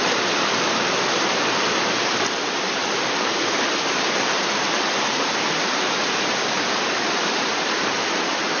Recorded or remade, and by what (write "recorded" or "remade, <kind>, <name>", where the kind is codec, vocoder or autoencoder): remade, vocoder, BigVGAN v2